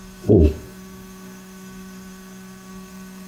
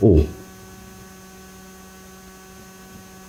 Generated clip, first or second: first